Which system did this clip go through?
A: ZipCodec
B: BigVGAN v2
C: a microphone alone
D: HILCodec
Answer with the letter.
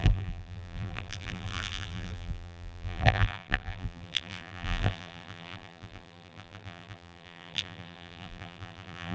B